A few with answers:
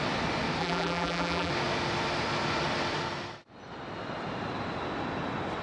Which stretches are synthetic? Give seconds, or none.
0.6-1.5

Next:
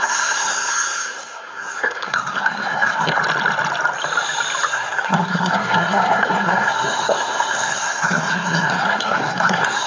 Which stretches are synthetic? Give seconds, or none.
0.0-3.2; 4.7-9.9